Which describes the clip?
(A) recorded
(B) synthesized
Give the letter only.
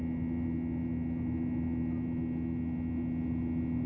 A